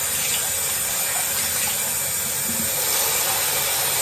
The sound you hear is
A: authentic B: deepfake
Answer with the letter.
A